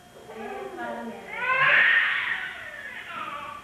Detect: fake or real real